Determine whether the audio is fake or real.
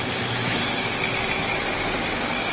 real